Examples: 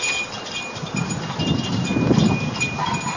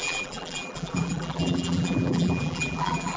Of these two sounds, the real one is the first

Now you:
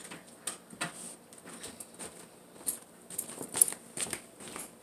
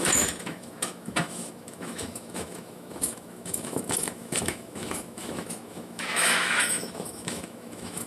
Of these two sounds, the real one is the first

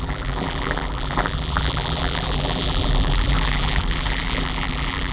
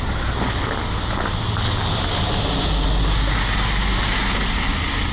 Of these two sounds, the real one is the second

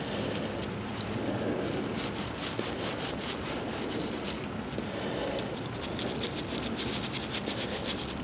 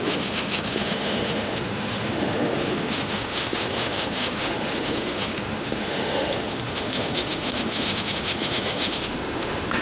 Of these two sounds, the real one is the first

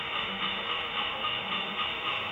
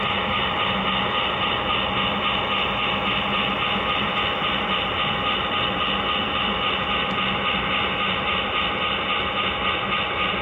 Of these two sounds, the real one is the second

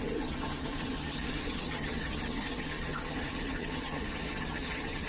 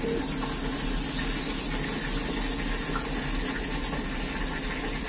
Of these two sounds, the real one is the second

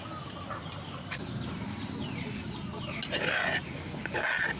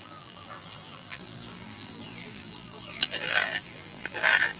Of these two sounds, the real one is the first